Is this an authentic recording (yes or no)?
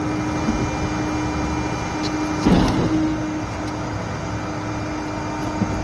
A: yes